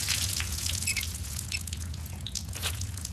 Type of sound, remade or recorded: remade